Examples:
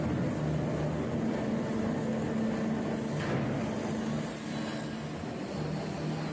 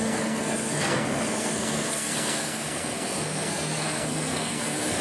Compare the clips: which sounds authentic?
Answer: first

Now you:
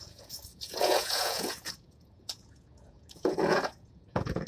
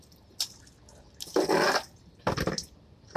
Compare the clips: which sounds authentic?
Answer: second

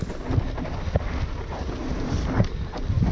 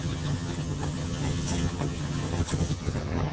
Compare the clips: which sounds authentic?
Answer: first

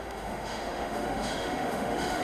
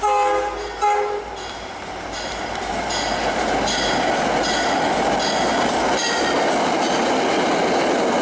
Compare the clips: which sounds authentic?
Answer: second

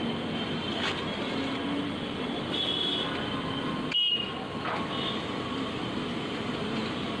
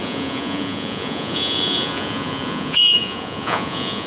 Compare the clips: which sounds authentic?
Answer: first